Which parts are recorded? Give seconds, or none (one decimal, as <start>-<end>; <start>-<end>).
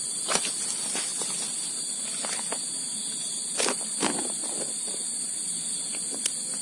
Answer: 0.0-6.6